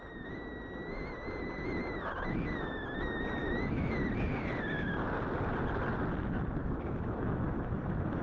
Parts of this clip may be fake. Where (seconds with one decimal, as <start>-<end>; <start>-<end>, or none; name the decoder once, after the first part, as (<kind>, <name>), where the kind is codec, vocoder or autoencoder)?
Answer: 3.4-3.9 (autoencoder, DAC-VAE); 6.6-8.2